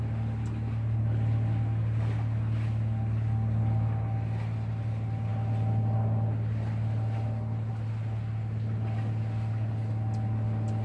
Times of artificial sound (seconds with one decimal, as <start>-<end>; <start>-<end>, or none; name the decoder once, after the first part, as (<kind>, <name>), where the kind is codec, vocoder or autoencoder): 5.3-7.7 (vocoder, BigVGAN v2)